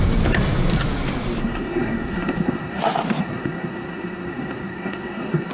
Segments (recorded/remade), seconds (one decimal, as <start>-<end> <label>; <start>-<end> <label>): 0.0-1.4 recorded; 1.4-2.8 remade; 2.8-3.2 recorded; 3.2-5.5 remade